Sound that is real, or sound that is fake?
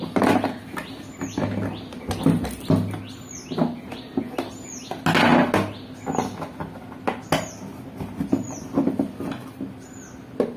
real